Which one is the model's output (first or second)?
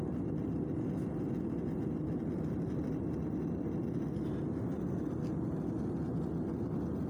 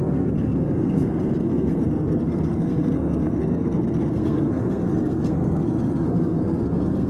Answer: second